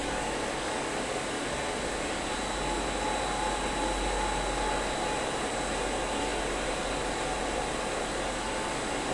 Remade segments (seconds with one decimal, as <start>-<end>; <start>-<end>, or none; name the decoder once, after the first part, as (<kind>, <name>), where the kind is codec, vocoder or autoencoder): 0.0-0.9 (codec, DAC)